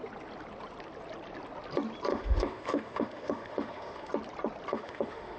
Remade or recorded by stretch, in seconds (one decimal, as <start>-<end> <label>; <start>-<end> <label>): 0.0-2.1 recorded; 2.1-4.1 remade; 4.1-4.7 recorded; 4.7-5.4 remade